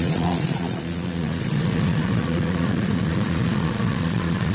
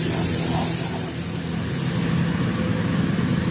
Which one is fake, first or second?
first